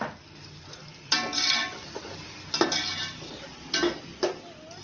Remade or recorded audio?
recorded